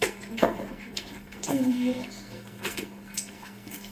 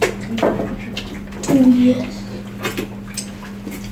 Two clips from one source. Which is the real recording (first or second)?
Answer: second